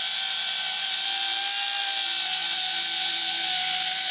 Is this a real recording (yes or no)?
yes